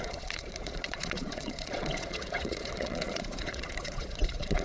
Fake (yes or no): yes